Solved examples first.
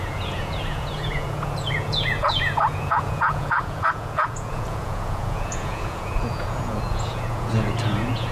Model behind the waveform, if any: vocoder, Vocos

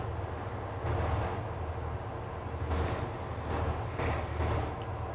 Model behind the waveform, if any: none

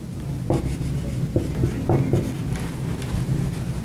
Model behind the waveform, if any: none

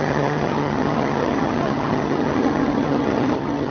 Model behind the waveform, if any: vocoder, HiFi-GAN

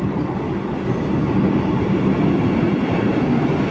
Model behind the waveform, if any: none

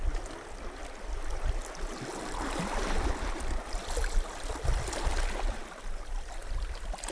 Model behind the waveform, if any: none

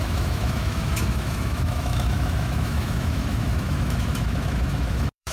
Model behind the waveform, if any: autoencoder, DAC-VAE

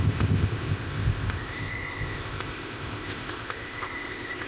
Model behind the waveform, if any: codec, ZipCodec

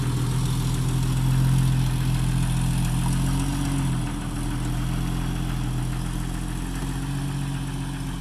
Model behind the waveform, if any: none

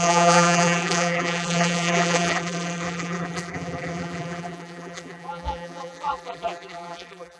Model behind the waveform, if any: vocoder, BigVGAN v2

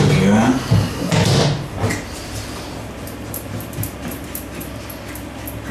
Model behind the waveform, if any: none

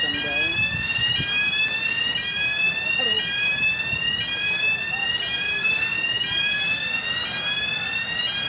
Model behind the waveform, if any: none